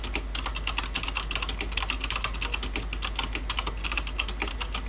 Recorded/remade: recorded